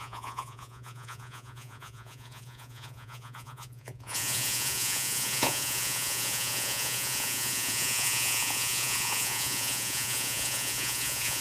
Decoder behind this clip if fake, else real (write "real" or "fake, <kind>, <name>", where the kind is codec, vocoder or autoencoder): fake, vocoder, Vocos